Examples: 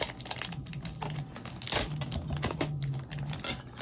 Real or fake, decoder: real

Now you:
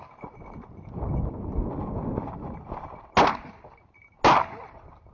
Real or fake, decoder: real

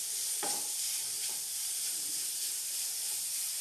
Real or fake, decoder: fake, vocoder, BigVGAN v2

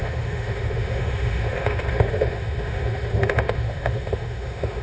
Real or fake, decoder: fake, autoencoder, DAC-VAE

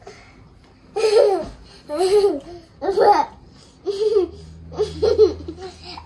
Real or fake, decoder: real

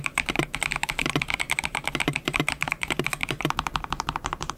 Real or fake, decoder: fake, vocoder, BigVGAN v2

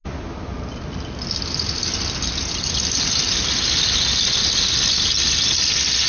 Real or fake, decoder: real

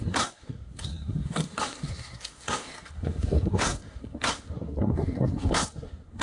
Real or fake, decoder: fake, codec, SNAC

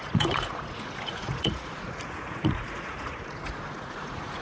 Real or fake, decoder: fake, vocoder, Vocos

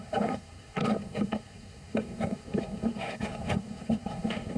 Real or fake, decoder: fake, codec, SNAC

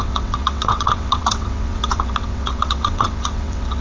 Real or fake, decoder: fake, vocoder, WaveNeXt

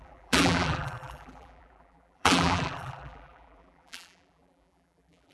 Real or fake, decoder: fake, vocoder, BigVGAN v2